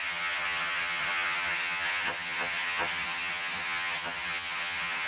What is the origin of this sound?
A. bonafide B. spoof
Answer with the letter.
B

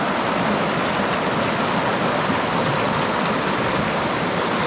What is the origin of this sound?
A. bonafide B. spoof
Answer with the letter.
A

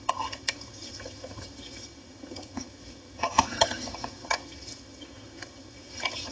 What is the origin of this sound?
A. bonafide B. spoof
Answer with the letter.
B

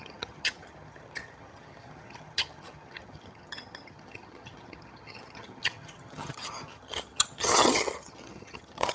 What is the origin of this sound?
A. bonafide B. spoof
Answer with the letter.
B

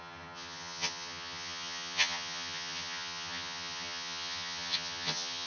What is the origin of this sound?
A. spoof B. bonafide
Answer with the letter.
A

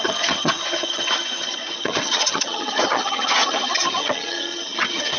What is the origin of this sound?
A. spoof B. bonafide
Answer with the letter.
A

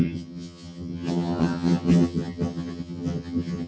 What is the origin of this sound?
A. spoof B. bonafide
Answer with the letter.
A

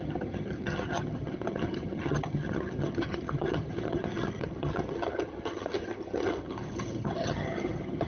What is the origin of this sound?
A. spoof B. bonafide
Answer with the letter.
A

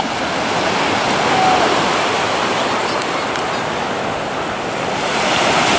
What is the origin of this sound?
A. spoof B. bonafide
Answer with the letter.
B